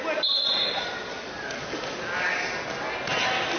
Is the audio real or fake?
real